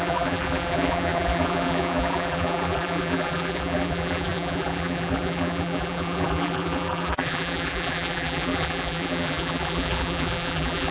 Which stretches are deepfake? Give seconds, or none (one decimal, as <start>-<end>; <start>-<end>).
0.0-10.9